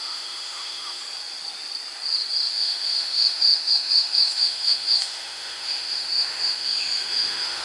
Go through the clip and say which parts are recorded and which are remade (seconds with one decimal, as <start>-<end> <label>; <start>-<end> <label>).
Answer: 0.0-1.0 remade; 1.0-2.5 recorded; 2.5-7.6 remade